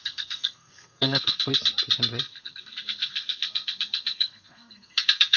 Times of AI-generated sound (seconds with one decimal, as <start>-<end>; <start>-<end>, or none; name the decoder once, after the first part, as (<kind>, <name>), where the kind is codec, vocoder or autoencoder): 0.0-1.5 (codec, SNAC); 2.2-5.4